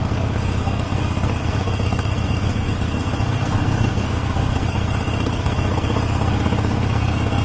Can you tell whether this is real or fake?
fake